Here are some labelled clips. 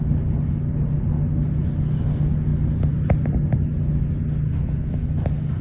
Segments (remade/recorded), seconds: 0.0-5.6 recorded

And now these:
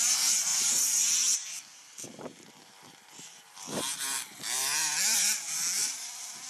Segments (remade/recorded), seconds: 0.0-6.5 remade

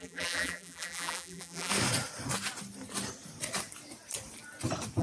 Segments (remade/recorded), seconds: 0.0-1.7 remade; 1.7-5.0 recorded

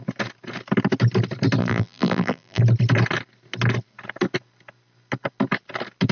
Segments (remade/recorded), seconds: 0.0-1.6 recorded; 1.6-2.6 remade; 2.6-6.1 recorded